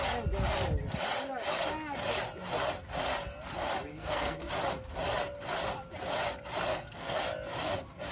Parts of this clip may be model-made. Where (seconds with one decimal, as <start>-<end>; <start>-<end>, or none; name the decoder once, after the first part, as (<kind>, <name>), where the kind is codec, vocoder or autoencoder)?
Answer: 3.9-4.5 (codec, SNAC); 6.7-7.2